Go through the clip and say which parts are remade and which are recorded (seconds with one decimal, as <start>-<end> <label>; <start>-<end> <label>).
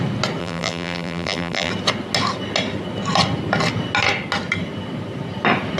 0.0-0.4 recorded; 0.4-1.7 remade; 1.7-5.8 recorded